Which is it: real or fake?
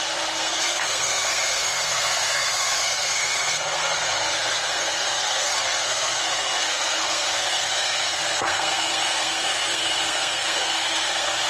fake